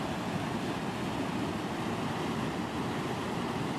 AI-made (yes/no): no